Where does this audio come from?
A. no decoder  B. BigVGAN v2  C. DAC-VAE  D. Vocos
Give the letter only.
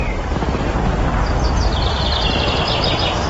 A